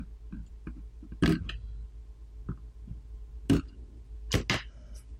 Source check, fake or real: real